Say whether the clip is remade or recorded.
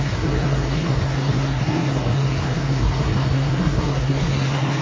remade